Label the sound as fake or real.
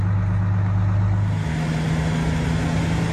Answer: real